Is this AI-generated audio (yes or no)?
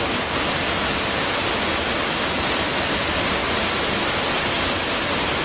no